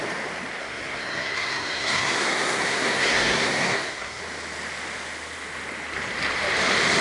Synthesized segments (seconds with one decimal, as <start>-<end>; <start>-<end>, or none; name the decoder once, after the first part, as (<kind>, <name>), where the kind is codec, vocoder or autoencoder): 0.6-4.2 (codec, SNAC)